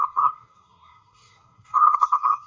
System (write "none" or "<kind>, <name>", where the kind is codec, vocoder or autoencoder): codec, SNAC